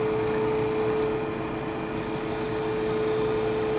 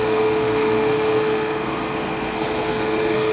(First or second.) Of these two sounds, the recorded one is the first